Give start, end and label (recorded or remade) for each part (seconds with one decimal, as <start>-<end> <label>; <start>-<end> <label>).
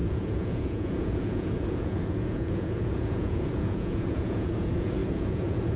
0.0-5.8 remade